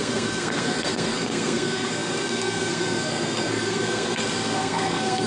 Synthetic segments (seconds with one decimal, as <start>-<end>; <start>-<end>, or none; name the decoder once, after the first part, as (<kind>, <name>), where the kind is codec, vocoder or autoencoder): 0.0-5.3 (codec, SNAC)